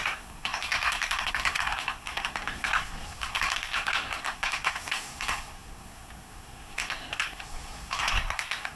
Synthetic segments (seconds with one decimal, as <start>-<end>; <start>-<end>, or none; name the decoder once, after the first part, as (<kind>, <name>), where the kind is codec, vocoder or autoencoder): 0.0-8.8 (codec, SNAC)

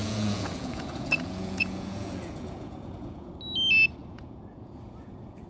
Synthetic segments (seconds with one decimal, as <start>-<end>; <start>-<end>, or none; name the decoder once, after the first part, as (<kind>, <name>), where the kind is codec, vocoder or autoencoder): 0.0-3.3 (vocoder, Vocos); 4.0-5.5

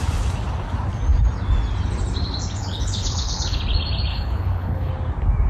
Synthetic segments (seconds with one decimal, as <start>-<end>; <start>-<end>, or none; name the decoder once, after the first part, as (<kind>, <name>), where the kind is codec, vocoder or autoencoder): 2.6-3.6 (codec, HILCodec); 4.1-4.9

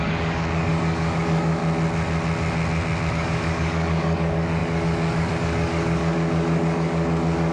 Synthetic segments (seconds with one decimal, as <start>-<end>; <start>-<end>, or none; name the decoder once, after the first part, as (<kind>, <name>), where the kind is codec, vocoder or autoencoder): 0.0-1.6 (codec, DAC); 3.1-7.5

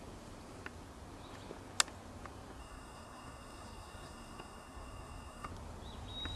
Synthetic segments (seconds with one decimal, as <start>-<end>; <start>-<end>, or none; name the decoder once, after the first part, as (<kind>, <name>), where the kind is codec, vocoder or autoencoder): 2.6-5.5 (codec, SNAC)